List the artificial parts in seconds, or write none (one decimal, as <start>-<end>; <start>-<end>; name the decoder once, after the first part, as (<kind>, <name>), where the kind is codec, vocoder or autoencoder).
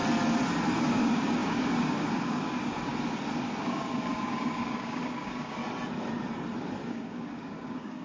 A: 0.8-2.9 (codec, DAC); 3.6-5.6; 6.9-8.0